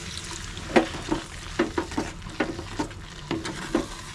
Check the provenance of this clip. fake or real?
real